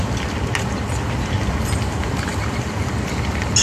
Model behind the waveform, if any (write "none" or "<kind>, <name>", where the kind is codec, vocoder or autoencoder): none